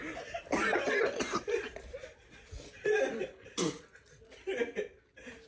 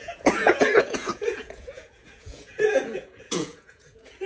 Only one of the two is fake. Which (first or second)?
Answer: second